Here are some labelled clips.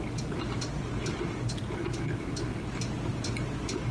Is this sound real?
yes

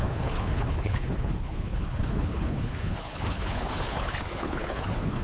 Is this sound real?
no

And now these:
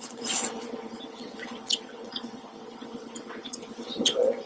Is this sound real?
no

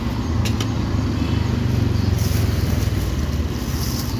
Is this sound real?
yes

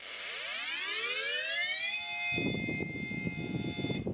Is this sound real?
yes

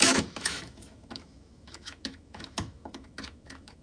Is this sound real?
no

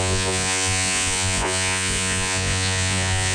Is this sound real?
no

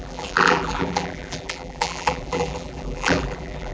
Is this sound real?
no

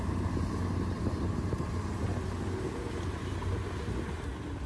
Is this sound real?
yes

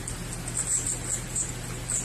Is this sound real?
yes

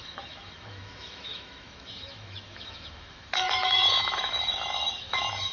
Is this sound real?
no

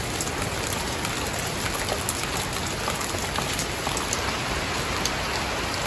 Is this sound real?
yes